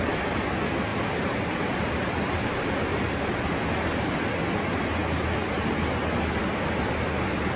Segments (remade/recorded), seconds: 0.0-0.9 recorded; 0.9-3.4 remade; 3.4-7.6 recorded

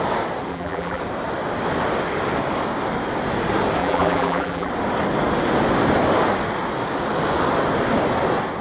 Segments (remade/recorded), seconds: 0.0-0.5 recorded; 0.5-1.0 remade; 1.0-3.8 recorded; 3.8-4.7 remade; 4.7-8.6 recorded

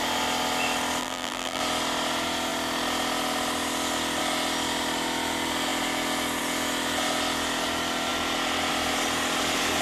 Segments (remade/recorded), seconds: 0.0-1.0 recorded; 1.0-1.6 remade; 1.6-9.8 recorded

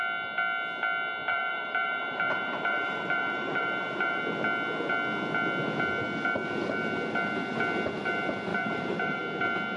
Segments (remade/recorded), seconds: 0.0-1.3 recorded; 1.3-4.2 remade; 4.2-8.5 recorded; 8.5-9.2 remade; 9.2-9.8 recorded

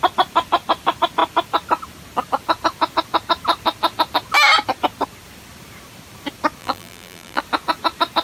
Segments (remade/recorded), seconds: 0.0-6.6 recorded; 6.6-7.4 remade; 7.4-8.2 recorded